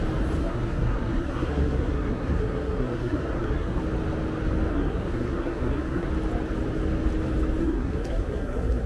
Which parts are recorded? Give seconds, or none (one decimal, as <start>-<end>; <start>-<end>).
0.0-0.4; 3.8-4.7; 6.1-7.6